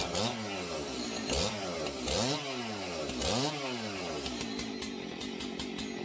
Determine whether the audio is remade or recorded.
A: recorded